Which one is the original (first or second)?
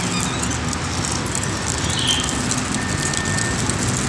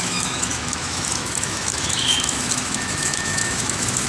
first